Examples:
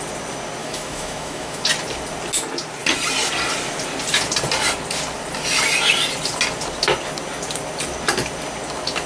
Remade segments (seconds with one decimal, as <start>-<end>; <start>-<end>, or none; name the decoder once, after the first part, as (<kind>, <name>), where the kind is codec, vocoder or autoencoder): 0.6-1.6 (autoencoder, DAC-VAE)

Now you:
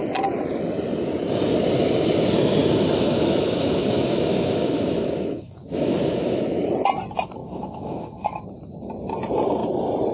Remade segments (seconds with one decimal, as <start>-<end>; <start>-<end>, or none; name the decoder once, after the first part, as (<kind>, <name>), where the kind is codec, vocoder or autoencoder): 2.6-6.6 (autoencoder, DAC-VAE); 7.4-8.4

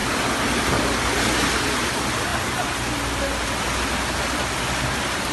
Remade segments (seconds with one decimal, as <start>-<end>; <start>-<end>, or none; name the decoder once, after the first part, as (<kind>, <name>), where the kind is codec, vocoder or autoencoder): none

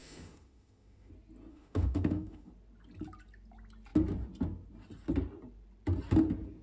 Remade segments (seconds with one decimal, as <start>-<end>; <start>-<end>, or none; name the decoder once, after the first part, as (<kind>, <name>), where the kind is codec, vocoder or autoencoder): 0.0-1.1 (autoencoder, DAC-VAE); 1.5-2.5